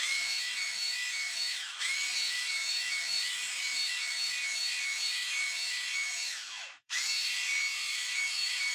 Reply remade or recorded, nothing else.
remade